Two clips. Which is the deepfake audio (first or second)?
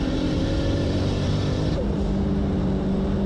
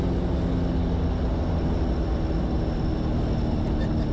first